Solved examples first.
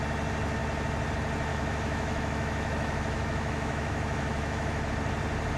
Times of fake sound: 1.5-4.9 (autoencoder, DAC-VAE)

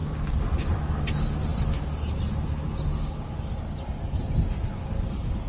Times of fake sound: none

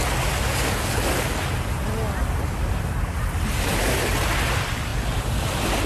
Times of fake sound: none

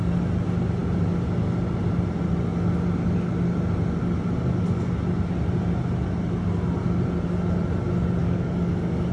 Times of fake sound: 8.2-9.1 (codec, DAC)

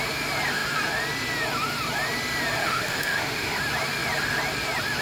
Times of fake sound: 2.6-3.6 (autoencoder, DAC-VAE)

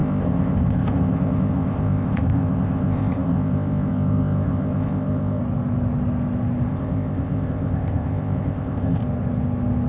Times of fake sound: 0.0-5.4 (codec, ZipCodec); 6.7-9.0